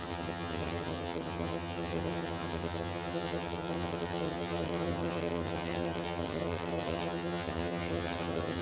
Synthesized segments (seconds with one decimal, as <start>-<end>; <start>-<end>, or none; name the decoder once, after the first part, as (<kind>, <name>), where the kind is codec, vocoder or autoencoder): 0.0-8.6 (vocoder, HiFi-GAN)